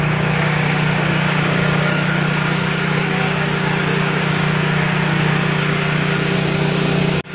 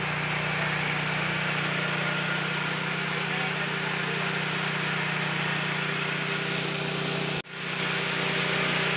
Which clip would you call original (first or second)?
second